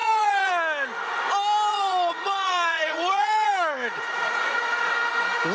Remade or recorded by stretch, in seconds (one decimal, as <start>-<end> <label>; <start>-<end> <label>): 0.0-0.5 remade; 0.5-1.7 recorded; 1.7-4.9 remade; 4.9-5.5 recorded